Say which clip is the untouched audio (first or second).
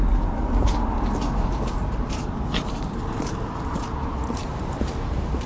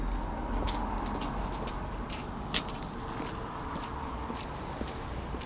second